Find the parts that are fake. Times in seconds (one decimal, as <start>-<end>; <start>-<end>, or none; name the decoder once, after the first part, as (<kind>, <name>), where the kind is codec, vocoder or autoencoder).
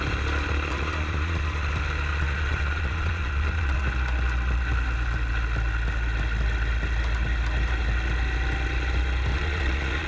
0.7-1.7 (vocoder, Vocos); 2.1-3.8; 9.3-10.1